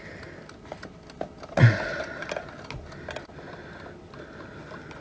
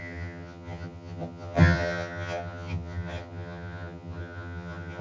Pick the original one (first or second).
first